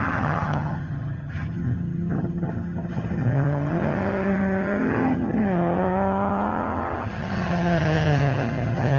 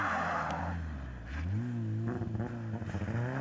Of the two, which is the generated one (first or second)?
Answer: first